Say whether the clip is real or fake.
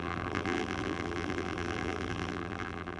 fake